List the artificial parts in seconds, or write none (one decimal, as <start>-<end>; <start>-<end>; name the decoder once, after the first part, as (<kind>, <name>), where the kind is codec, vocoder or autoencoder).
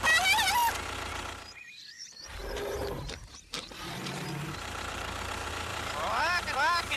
2.4-5.3 (vocoder, BigVGAN v2); 5.7-6.2